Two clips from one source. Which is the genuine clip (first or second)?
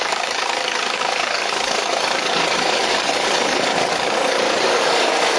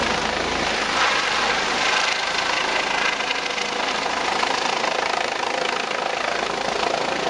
second